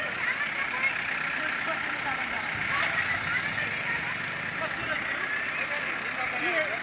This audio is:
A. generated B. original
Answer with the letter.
B